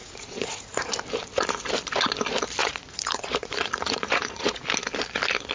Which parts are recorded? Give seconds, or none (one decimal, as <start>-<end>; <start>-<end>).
0.9-2.6; 4.6-5.5